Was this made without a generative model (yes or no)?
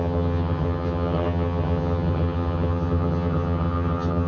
no